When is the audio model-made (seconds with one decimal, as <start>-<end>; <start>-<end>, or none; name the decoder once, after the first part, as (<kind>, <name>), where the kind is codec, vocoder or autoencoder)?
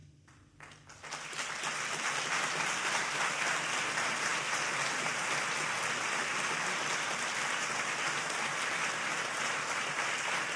0.0-1.3 (vocoder, BigVGAN v2)